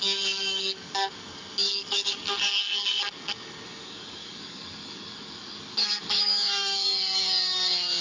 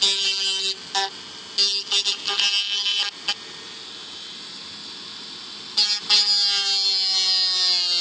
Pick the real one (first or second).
second